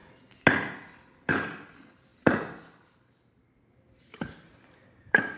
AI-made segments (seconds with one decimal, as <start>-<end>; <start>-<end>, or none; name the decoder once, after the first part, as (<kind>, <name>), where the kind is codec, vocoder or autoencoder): 1.3-5.4 (vocoder, BigVGAN v2)